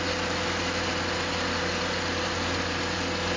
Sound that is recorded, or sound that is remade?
recorded